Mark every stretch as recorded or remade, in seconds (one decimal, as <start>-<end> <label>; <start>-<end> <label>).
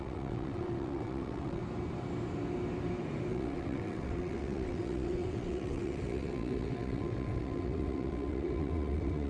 0.0-1.6 remade; 1.6-3.3 recorded; 3.3-9.3 remade